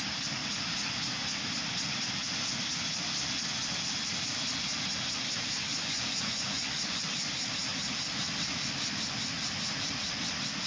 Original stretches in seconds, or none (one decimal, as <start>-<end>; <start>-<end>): 0.0-5.7; 7.0-10.7